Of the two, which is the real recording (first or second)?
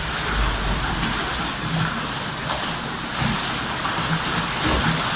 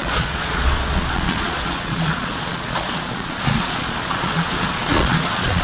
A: first